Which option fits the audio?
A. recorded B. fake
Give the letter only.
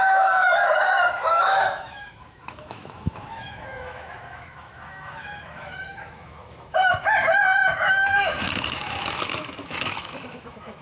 B